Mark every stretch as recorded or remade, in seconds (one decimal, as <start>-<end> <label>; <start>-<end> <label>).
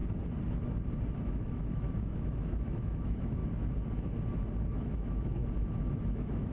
0.0-1.3 recorded; 1.3-3.4 remade; 3.4-4.8 recorded; 4.8-5.4 remade; 5.4-6.1 recorded; 6.1-6.5 remade